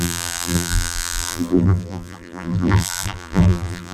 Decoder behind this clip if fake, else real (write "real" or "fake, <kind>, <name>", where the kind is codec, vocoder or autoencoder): fake, vocoder, BigVGAN v2